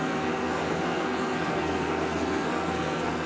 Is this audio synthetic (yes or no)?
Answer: yes